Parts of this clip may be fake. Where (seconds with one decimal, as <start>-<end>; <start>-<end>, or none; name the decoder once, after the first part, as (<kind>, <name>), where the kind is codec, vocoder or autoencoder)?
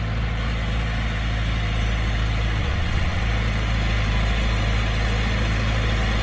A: 2.6-3.2 (vocoder, WaveNeXt)